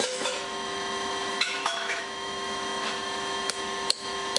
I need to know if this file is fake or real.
fake